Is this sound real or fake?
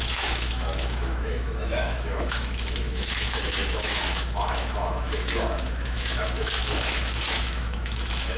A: fake